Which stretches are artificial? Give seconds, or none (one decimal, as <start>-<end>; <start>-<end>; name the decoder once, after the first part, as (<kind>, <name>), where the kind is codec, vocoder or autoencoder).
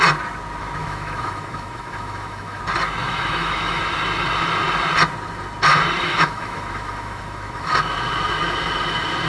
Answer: 0.8-2.6 (autoencoder, DAC-VAE); 3.0-3.8; 6.0-7.7